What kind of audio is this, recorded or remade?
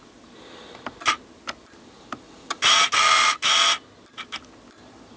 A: recorded